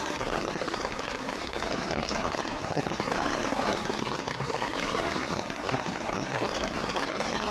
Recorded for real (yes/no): no